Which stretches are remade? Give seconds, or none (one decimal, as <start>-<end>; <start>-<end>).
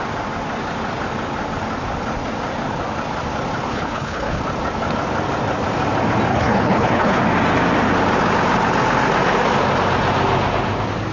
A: 3.7-4.4; 6.3-7.2